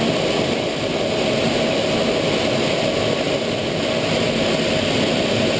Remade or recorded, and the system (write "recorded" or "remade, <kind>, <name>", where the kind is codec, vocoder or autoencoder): recorded